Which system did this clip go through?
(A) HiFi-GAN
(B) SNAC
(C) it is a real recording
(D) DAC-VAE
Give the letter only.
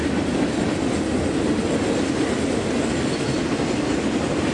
C